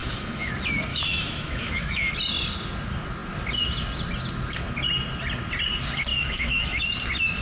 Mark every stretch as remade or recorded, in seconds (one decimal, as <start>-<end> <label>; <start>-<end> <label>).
0.0-0.5 remade; 0.5-0.9 recorded; 0.9-2.1 remade; 2.1-6.1 recorded; 6.1-6.8 remade; 6.8-7.4 recorded